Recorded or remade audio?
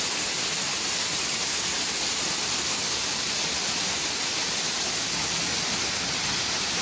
recorded